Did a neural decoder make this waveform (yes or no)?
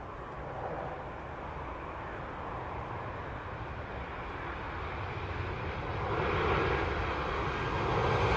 no